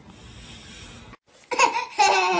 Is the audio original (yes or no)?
yes